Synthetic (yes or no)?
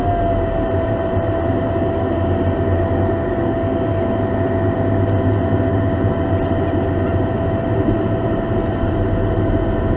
no